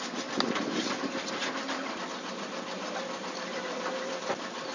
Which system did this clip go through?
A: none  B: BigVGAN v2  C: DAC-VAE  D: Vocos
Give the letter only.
A